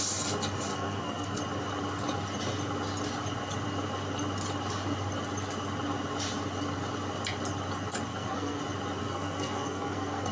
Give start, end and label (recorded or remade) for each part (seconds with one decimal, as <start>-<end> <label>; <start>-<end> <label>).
0.0-0.7 recorded; 0.7-1.4 remade; 1.4-8.1 recorded; 8.1-8.6 remade; 8.6-9.0 recorded; 9.0-10.3 remade